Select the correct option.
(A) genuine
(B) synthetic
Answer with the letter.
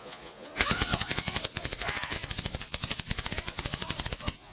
B